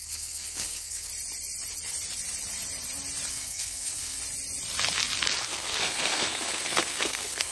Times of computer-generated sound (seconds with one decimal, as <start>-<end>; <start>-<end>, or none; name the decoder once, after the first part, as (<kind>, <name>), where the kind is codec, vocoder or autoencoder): 0.0-1.1 (codec, SNAC); 3.3-4.2; 5.5-7.5